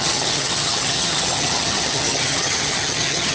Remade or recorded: remade